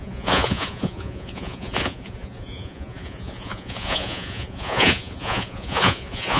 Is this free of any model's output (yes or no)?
no